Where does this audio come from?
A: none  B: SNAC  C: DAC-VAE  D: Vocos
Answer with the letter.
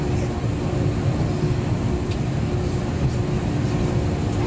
A